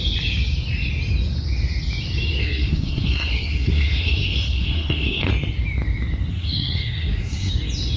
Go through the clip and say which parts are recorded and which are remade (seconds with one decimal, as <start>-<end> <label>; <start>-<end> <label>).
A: 0.0-2.4 recorded; 2.4-5.3 remade; 5.3-6.3 recorded; 6.3-7.5 remade; 7.5-8.0 recorded